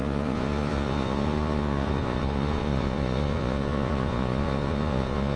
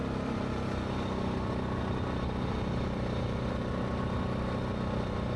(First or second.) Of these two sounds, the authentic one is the second